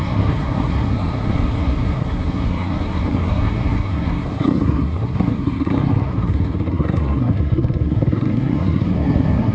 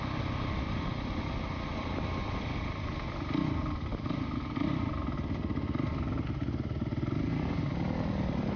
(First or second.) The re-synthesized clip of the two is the first